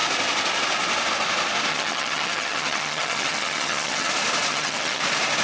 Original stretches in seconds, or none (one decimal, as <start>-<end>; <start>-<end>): 0.0-1.7; 4.1-4.5; 5.0-5.4